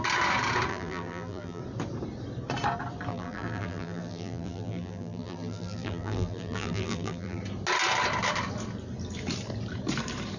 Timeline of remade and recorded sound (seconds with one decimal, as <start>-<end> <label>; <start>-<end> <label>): 0.0-0.7 recorded; 0.7-1.6 remade; 1.6-3.1 recorded; 3.1-7.4 remade; 7.4-10.4 recorded